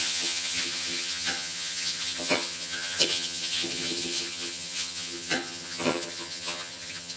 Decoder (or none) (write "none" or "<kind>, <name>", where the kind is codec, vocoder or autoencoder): vocoder, HiFi-GAN